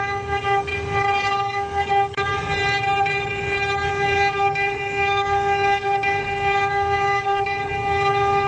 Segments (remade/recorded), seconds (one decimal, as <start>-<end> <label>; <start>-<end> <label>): 0.0-0.7 remade; 0.7-1.2 recorded; 1.2-2.3 remade; 2.3-3.9 recorded; 3.9-8.5 remade